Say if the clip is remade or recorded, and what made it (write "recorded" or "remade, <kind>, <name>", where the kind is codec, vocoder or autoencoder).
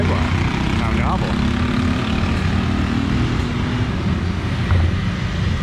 recorded